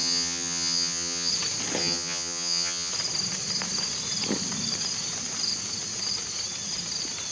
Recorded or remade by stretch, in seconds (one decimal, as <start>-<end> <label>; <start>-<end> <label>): 0.0-1.3 remade; 1.3-1.8 recorded; 1.8-2.9 remade; 2.9-7.3 recorded